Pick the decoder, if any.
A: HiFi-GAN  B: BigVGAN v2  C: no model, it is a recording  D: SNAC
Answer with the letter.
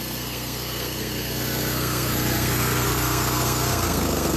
D